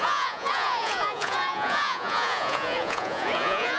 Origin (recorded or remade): remade